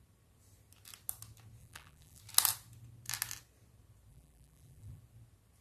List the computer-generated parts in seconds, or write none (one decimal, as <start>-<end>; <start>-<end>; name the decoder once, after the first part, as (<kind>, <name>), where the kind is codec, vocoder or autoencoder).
1.6-2.2 (vocoder, BigVGAN v2); 4.1-5.0